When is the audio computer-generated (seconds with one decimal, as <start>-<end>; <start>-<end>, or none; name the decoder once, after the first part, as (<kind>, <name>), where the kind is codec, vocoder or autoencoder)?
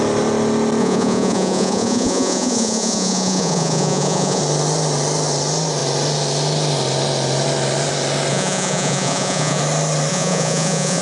0.8-4.4 (vocoder, Vocos); 8.3-9.6; 10.1-11.0